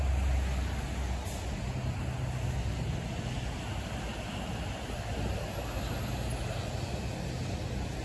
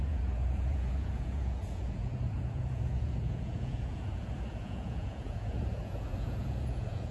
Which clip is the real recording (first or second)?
first